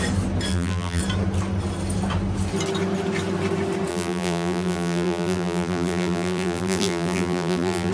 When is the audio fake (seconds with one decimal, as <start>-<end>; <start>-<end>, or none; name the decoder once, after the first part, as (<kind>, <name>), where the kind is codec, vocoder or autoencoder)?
0.5-1.0 (vocoder, BigVGAN v2); 3.9-7.9